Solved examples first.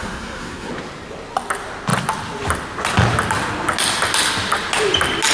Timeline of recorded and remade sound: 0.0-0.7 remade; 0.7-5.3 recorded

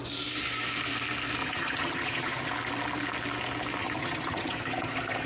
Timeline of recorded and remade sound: 0.0-1.4 recorded; 1.4-2.5 remade; 2.5-3.8 recorded; 3.8-5.3 remade